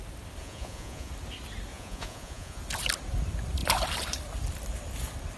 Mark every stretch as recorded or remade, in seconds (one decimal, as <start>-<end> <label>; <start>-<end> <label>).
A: 0.0-0.4 recorded; 0.4-1.1 remade; 1.1-1.7 recorded; 1.7-2.6 remade; 2.6-5.4 recorded